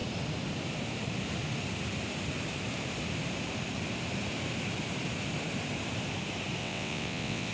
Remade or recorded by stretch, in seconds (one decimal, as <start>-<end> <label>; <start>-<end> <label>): 0.0-6.6 recorded; 6.6-7.5 remade